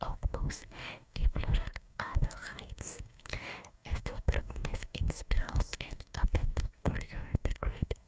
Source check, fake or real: fake